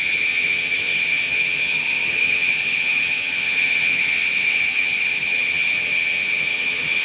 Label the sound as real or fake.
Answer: fake